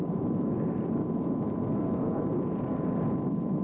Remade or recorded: recorded